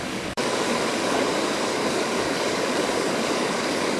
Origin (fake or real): fake